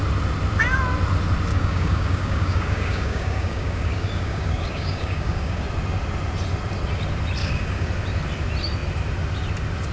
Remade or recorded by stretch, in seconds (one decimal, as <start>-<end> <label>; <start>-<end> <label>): 0.0-1.5 recorded; 1.5-5.6 remade; 5.6-7.4 recorded; 7.4-7.9 remade; 7.9-9.9 recorded